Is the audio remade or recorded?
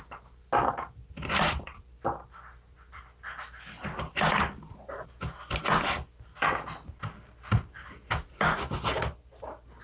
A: recorded